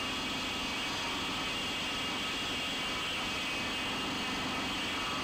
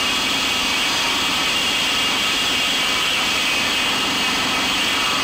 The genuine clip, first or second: first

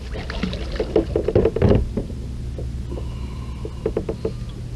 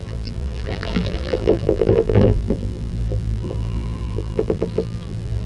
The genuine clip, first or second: first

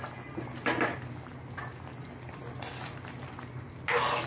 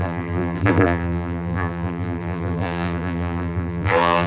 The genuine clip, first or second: first